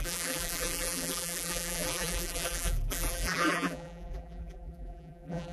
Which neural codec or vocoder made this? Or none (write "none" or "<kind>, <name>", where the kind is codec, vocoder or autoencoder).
vocoder, BigVGAN v2